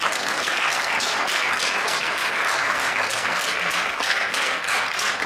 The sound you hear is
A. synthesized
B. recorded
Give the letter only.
A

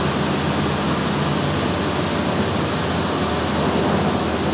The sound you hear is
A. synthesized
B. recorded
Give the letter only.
B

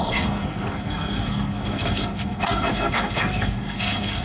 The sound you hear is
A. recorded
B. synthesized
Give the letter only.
B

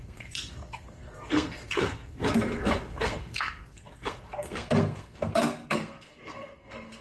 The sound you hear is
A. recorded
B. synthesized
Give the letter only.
B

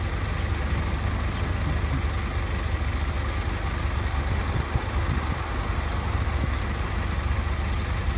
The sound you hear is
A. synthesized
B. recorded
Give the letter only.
B